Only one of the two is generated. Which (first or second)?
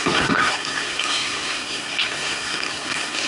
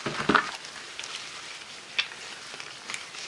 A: first